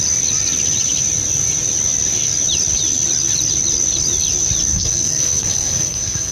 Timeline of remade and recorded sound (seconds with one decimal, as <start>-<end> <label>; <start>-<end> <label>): 0.0-4.7 recorded; 4.7-6.3 remade